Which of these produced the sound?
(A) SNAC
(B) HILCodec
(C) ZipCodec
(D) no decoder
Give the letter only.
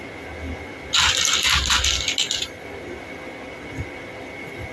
D